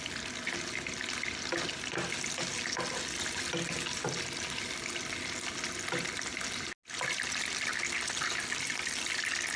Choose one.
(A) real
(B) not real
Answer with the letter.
A